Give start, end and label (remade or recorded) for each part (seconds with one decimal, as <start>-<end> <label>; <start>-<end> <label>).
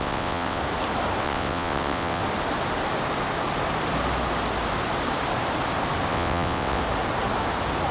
0.0-0.6 remade; 0.6-1.2 recorded; 1.2-2.2 remade; 2.2-6.1 recorded; 6.1-6.8 remade; 6.8-7.9 recorded